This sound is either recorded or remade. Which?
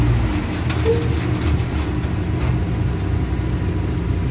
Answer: recorded